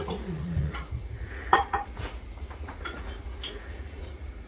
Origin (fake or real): fake